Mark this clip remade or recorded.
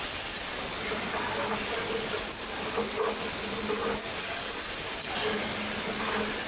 recorded